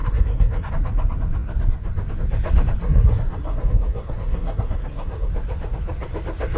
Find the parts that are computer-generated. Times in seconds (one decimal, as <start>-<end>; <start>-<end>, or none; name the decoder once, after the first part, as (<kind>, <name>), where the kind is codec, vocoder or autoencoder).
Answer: 0.0-0.7 (codec, SNAC); 2.8-5.3